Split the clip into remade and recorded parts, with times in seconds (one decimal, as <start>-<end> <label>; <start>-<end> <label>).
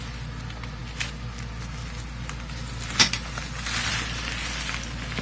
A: 0.0-5.2 recorded